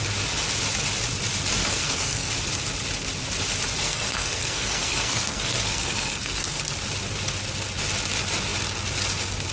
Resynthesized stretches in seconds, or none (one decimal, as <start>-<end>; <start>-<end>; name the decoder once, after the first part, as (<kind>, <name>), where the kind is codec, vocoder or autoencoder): 1.6-2.3 (codec, SNAC); 3.8-6.6